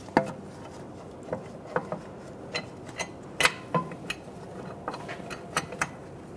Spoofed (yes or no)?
no